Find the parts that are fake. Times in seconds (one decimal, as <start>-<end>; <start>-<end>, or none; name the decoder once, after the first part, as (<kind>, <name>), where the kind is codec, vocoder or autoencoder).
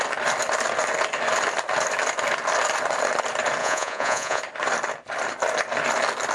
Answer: 3.6-4.4 (vocoder, Vocos)